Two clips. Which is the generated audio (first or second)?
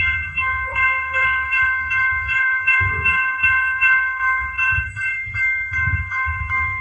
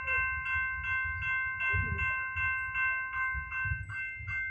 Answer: first